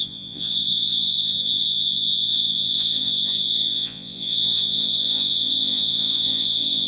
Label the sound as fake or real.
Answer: fake